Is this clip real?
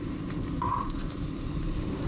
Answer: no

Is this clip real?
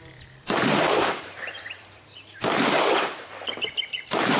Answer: no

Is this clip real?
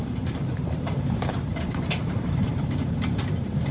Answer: no